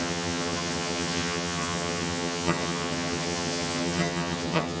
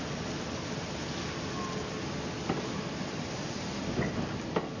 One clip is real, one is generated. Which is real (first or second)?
second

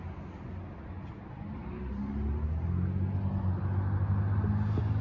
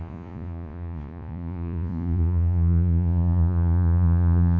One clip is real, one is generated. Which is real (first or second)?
first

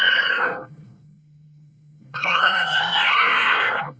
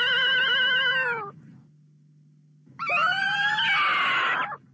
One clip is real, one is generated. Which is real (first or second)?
second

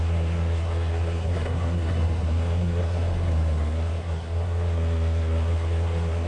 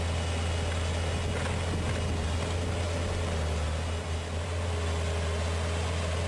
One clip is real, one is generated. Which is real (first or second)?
second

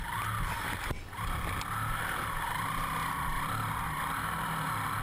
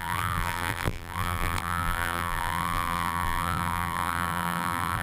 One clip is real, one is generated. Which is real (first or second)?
first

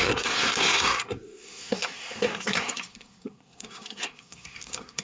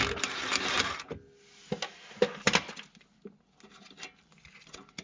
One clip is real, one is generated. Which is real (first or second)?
second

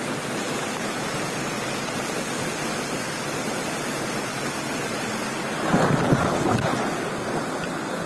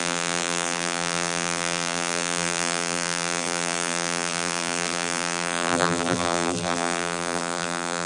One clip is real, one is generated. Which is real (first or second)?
first